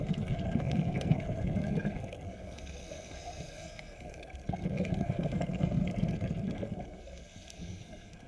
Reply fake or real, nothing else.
fake